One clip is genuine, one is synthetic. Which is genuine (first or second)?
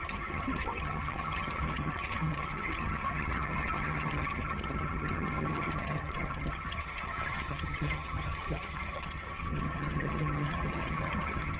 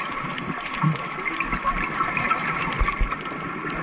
second